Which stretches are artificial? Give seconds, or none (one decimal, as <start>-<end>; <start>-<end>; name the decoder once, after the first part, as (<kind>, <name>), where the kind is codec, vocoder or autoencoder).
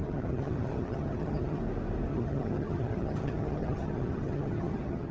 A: 0.0-1.6 (vocoder, HiFi-GAN); 2.1-5.1